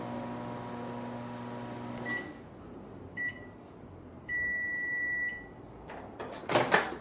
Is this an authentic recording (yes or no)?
yes